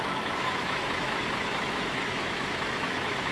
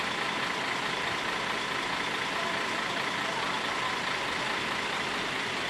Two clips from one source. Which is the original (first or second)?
second